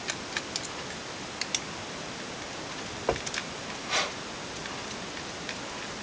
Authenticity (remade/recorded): recorded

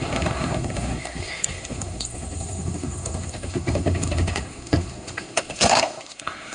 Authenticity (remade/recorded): remade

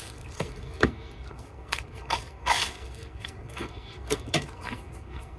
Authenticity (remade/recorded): remade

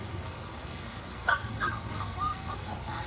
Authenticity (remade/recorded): remade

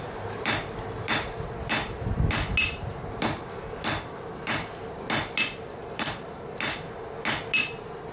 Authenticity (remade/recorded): recorded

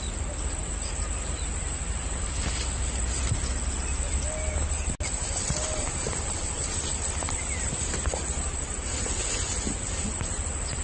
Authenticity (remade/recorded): recorded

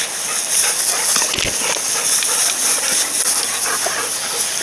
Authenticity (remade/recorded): recorded